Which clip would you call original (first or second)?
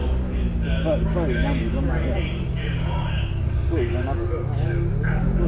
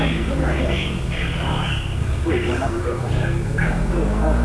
first